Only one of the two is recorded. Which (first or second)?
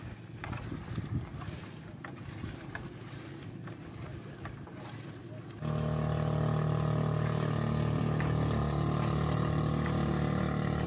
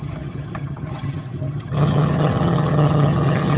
first